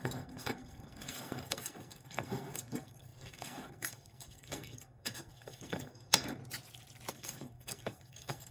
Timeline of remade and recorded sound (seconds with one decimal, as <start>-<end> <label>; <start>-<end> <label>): 0.0-6.4 remade; 6.4-7.1 recorded; 7.1-8.5 remade

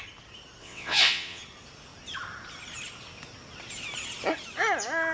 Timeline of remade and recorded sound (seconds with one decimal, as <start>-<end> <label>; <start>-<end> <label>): 0.0-0.6 recorded; 0.6-1.4 remade; 1.4-5.1 recorded

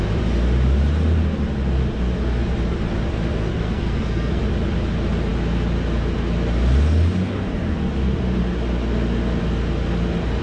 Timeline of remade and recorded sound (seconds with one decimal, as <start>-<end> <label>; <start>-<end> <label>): 0.0-3.5 recorded; 3.5-4.4 remade; 4.4-10.4 recorded

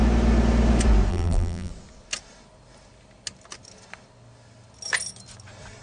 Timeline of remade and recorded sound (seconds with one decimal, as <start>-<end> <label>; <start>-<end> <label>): 0.0-1.1 recorded; 1.1-1.7 remade; 1.7-5.8 recorded

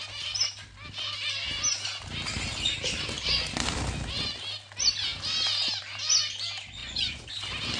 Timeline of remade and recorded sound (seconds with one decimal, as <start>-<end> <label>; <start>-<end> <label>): 0.0-6.8 recorded; 6.8-7.3 remade; 7.3-7.8 recorded

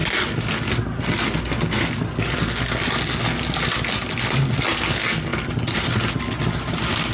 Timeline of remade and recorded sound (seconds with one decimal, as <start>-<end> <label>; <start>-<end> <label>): 0.0-7.1 recorded